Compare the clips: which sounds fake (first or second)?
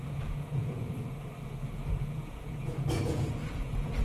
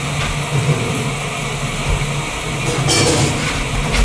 first